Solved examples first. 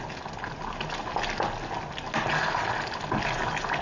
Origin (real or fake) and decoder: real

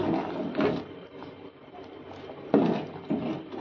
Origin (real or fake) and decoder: real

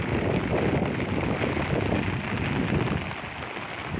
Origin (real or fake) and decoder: real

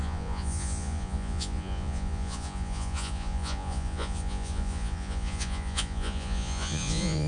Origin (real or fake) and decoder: fake, vocoder, Vocos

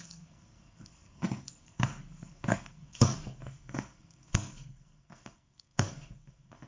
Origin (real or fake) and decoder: fake, codec, SNAC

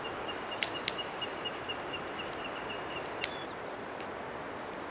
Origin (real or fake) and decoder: real